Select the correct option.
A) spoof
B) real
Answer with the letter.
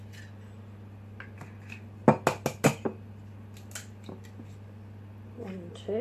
B